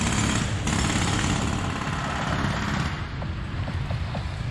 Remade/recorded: recorded